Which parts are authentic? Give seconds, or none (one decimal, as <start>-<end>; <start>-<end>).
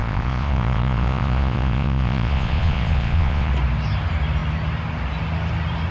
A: 3.5-5.9